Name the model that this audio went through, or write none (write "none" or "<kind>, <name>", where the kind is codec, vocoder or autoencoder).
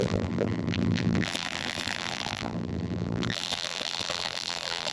vocoder, BigVGAN v2